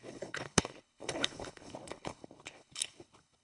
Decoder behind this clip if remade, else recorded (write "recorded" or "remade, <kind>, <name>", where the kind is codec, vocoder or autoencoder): remade, codec, HILCodec